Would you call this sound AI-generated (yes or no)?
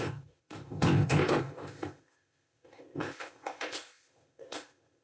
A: yes